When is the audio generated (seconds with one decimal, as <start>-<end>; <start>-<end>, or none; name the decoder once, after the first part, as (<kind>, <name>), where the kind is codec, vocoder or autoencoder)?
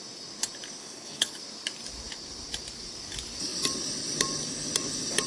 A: 0.8-1.4 (codec, HILCodec)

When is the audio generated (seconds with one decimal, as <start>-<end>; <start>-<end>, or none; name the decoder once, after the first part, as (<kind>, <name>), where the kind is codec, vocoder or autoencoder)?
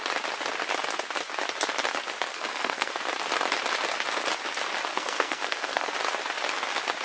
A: 2.3-2.9 (codec, SNAC); 4.9-5.9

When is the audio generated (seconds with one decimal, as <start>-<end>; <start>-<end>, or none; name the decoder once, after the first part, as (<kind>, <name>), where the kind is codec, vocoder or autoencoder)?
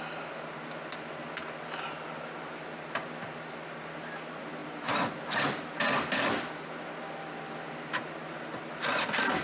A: none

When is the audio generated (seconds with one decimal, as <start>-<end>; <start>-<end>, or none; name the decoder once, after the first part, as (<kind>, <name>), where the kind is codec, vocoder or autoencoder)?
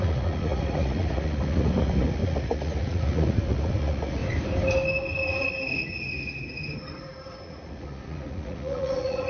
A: 0.0-4.2 (vocoder, Vocos); 7.4-9.3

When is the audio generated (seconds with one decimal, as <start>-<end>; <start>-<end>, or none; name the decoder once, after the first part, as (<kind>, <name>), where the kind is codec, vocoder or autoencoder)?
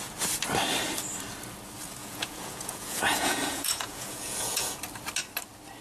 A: 2.0-4.8 (vocoder, Vocos)